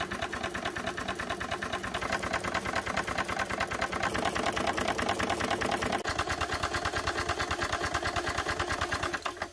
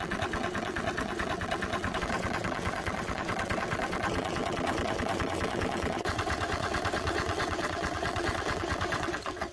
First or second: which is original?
first